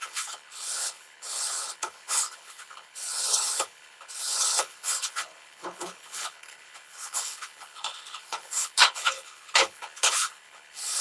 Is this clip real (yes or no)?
no